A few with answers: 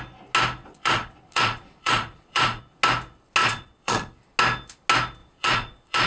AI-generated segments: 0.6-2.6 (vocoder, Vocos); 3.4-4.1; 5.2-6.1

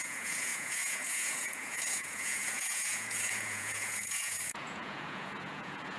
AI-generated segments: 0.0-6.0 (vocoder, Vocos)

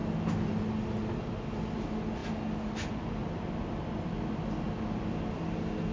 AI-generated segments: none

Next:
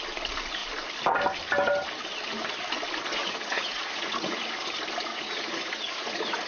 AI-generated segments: 3.2-4.5 (vocoder, Vocos); 5.1-6.5

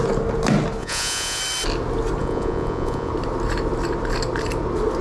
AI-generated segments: 0.8-1.4 (vocoder, Vocos); 2.2-3.1

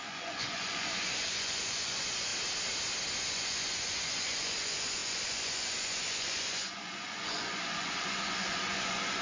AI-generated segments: 0.0-2.3 (vocoder, Vocos); 3.2-9.2

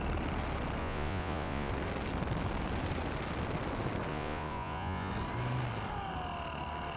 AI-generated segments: 0.8-1.7 (vocoder, Vocos); 4.1-5.1

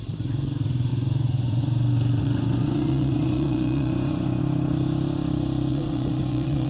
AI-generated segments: 0.9-1.6 (vocoder, Vocos); 2.2-4.4; 5.7-6.7